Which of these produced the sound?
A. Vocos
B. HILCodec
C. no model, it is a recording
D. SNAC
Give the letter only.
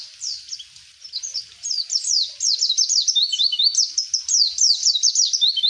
C